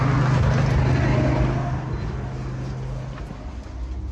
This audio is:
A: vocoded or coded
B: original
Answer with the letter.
B